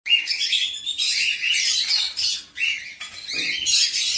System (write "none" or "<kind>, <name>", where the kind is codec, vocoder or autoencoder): none